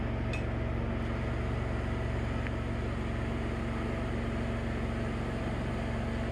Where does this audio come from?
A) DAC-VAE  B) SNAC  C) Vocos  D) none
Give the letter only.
D